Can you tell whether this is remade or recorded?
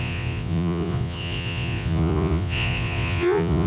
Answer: remade